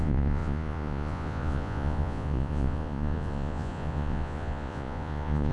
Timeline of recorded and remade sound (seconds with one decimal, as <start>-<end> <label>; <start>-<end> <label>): 0.0-5.5 remade